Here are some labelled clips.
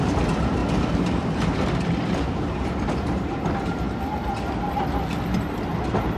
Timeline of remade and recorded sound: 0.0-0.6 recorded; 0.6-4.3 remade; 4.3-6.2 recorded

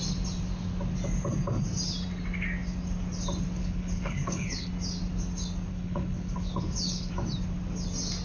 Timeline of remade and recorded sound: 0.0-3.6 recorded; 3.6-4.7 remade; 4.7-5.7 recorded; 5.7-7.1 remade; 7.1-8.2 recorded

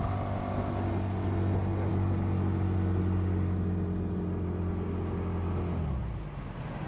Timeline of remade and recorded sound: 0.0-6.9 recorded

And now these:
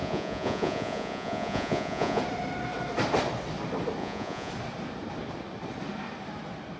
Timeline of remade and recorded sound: 0.0-2.2 remade; 2.2-4.0 recorded; 4.0-4.5 remade; 4.5-6.8 recorded

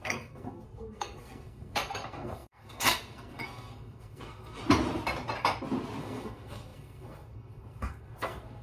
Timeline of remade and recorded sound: 0.0-4.6 remade; 4.6-6.0 recorded; 6.0-8.6 remade